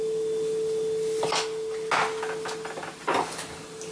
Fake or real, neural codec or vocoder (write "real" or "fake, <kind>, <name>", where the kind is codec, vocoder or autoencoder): real